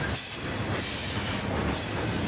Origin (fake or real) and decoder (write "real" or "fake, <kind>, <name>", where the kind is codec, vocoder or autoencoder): real